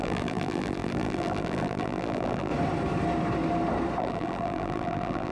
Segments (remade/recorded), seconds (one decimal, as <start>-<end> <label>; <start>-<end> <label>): 0.0-2.5 remade; 2.5-4.0 recorded; 4.0-5.3 remade